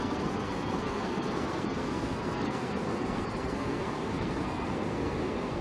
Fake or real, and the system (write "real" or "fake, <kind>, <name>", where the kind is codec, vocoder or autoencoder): fake, codec, SNAC